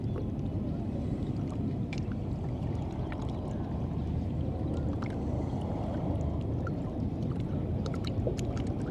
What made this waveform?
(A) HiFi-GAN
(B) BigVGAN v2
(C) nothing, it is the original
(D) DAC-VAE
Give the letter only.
B